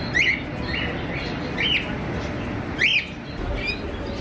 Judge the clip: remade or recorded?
recorded